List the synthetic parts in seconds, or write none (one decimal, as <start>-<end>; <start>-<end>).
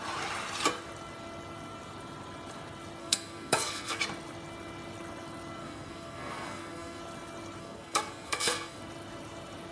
3.0-4.0; 5.6-7.0; 7.6-8.8